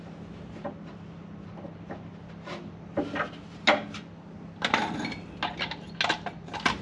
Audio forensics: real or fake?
real